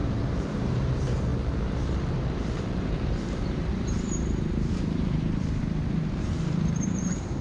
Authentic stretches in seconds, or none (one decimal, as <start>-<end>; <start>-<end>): 1.3-1.8